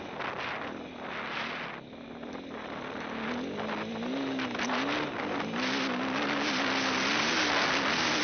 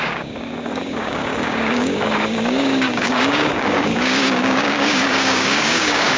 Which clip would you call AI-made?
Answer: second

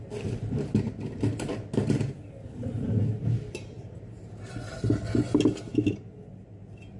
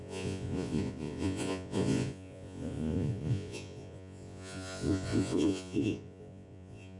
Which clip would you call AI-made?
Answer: second